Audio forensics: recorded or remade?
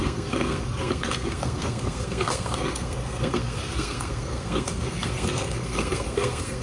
remade